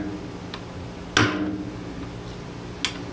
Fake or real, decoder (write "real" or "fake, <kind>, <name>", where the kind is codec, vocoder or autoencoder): real